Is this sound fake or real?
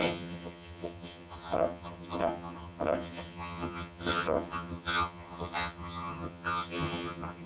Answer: fake